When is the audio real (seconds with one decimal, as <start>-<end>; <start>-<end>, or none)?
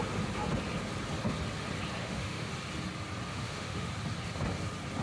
0.0-2.0; 2.5-3.3; 3.9-5.0